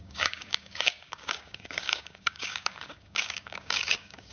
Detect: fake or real fake